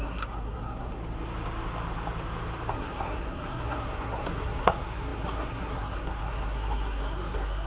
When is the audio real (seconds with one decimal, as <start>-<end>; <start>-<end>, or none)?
1.0-2.7